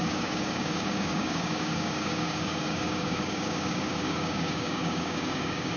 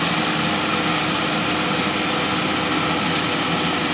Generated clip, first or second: first